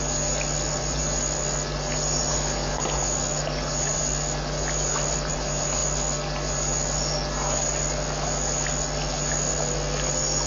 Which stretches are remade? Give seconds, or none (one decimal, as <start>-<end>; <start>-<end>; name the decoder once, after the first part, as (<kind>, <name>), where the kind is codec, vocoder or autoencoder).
2.3-2.8 (codec, DAC)